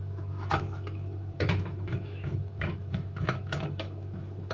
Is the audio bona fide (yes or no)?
no